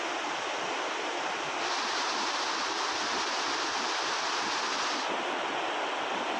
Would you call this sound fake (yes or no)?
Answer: no